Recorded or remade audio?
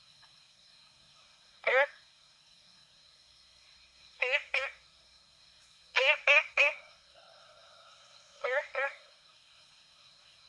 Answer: remade